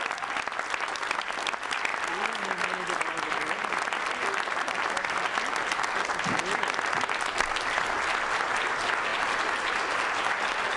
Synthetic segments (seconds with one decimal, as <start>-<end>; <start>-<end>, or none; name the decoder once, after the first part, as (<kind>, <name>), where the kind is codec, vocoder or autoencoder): none